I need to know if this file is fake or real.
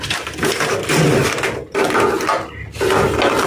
real